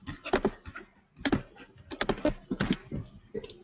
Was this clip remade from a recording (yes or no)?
no